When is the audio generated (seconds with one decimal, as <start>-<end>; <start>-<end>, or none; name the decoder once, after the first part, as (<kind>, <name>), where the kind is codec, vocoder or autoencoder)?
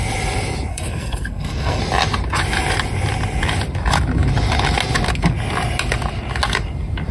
0.7-1.8 (codec, SNAC)